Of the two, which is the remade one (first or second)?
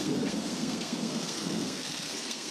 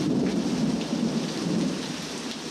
first